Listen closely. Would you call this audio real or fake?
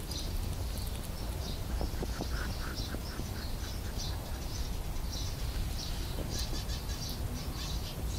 real